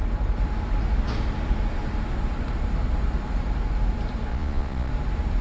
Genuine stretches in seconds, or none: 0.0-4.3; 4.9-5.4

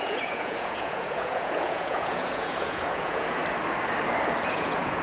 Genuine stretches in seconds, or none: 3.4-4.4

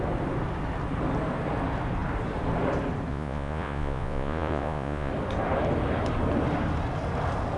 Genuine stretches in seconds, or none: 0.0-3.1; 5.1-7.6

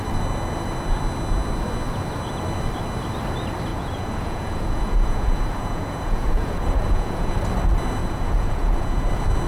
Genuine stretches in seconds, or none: 0.0-3.7; 7.3-8.0; 9.1-9.5